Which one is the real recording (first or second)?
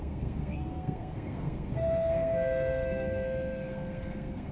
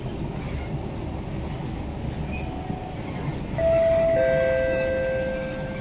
second